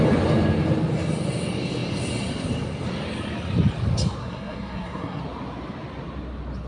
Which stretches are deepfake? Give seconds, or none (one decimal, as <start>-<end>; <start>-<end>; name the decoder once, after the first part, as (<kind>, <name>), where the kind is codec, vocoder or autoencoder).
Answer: 4.2-5.2 (codec, SNAC)